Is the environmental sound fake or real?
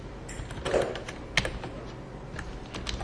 real